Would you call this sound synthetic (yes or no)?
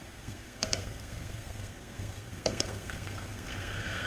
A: yes